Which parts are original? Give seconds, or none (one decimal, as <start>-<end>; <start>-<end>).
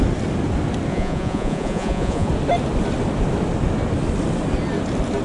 0.0-0.9; 2.3-5.2